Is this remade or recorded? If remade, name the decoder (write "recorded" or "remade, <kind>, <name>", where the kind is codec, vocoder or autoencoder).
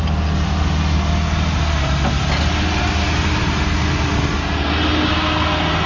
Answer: recorded